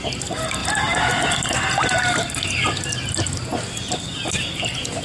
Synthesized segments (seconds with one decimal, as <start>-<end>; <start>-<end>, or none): none